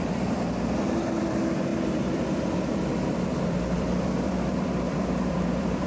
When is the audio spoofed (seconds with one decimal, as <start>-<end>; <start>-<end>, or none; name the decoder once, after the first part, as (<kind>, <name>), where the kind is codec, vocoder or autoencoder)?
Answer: 0.0-5.9 (vocoder, BigVGAN v2)